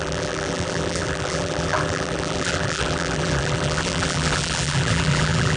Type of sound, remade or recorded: remade